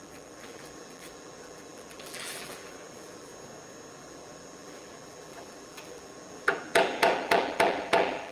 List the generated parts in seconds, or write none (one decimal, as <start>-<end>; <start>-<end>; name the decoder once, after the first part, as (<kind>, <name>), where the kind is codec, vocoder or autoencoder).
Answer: 0.0-3.3 (vocoder, BigVGAN v2); 3.9-8.3